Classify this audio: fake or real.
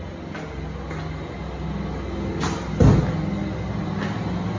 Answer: real